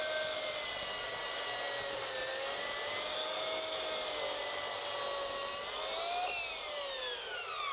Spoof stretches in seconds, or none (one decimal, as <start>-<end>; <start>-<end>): 3.2-3.8